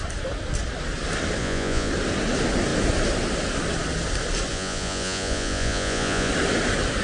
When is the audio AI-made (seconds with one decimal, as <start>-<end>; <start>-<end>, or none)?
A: 1.4-1.9; 4.5-6.3